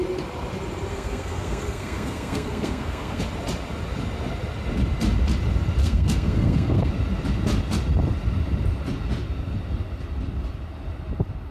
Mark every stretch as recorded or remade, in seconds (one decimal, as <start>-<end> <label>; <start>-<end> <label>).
0.0-0.9 recorded; 0.9-3.2 remade; 3.2-5.8 recorded; 5.8-6.9 remade; 6.9-11.5 recorded